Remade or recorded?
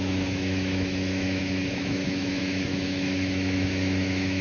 remade